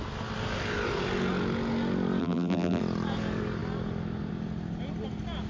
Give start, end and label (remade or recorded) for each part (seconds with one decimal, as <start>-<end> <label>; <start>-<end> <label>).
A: 0.0-2.2 recorded; 2.2-2.8 remade; 2.8-5.5 recorded